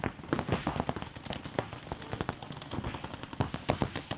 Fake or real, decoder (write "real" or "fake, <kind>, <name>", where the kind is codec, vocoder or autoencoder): real